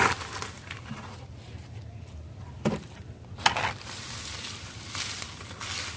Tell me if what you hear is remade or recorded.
recorded